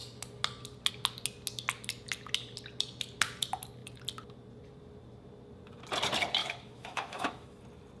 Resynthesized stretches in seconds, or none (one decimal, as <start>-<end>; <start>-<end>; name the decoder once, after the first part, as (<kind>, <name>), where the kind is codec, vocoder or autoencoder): 6.4-7.6 (autoencoder, DAC-VAE)

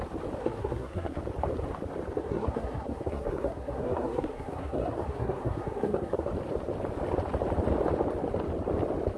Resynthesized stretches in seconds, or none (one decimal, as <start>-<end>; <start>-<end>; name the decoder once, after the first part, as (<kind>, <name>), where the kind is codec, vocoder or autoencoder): 0.4-1.2 (codec, SNAC); 2.2-6.3

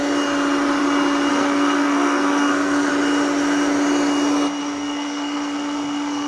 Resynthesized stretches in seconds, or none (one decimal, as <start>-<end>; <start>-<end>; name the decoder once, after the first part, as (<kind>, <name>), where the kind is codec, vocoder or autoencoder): 1.3-2.9 (codec, SNAC); 4.6-6.3

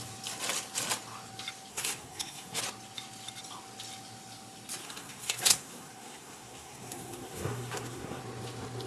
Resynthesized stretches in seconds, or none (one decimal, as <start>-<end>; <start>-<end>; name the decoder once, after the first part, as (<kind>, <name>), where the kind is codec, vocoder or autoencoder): 1.7-2.6 (codec, SNAC); 4.8-8.2